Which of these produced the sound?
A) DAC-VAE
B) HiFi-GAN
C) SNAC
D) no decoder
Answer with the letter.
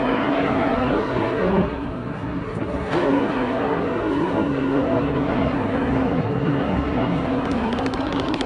C